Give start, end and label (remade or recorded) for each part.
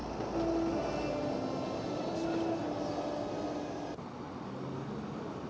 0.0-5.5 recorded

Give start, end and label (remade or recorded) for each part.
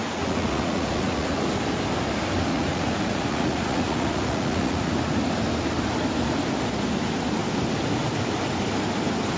0.0-1.4 remade; 1.4-2.5 recorded; 2.5-4.9 remade; 4.9-9.4 recorded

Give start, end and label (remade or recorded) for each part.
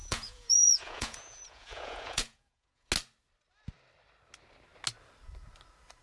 0.0-2.9 remade; 2.9-6.0 recorded